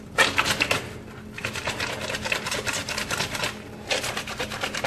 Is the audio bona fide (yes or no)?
no